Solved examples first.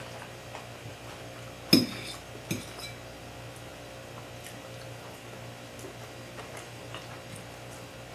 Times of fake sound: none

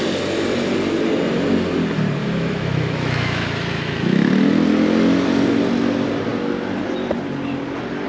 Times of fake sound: 2.2-4.3 (autoencoder, DAC-VAE)

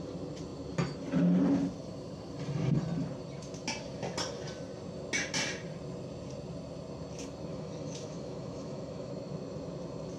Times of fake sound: 7.5-9.1 (autoencoder, DAC-VAE)

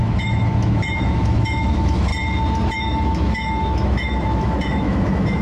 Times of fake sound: 0.0-2.1 (autoencoder, DAC-VAE); 2.7-5.4

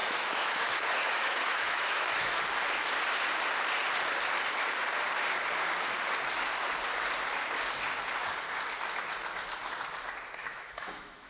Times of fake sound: 0.0-2.4 (autoencoder, DAC-VAE); 10.4-11.3

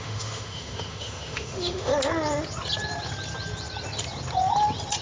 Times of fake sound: 0.0-1.9 (autoencoder, DAC-VAE)

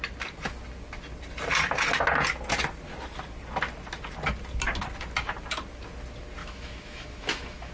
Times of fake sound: 6.4-7.7 (autoencoder, DAC-VAE)

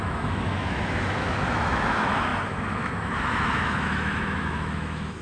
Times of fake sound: 0.0-5.2 (autoencoder, DAC-VAE)